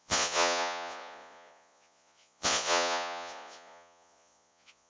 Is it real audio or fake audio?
fake